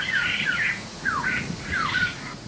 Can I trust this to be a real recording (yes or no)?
no